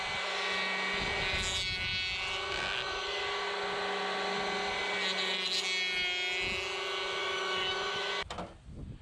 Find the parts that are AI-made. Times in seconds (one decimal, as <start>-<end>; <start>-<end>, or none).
7.2-8.1